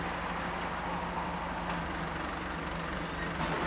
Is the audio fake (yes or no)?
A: no